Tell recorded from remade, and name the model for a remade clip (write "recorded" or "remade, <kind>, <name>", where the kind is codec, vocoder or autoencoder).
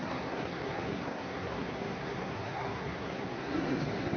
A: remade, codec, SNAC